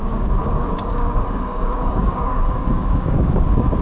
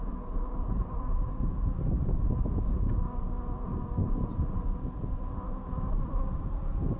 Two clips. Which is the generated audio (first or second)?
first